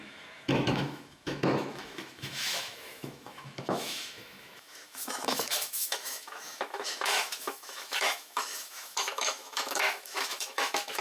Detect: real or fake fake